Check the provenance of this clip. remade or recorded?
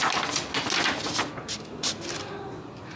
recorded